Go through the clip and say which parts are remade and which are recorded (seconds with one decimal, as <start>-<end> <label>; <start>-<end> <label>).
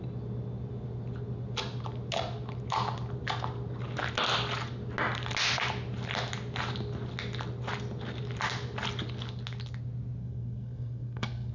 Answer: 0.0-10.2 recorded; 10.2-11.5 remade